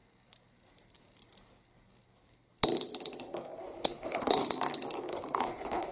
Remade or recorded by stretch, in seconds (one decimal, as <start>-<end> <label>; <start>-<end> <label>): 0.0-3.6 recorded; 3.6-4.5 remade; 4.5-5.1 recorded; 5.1-5.9 remade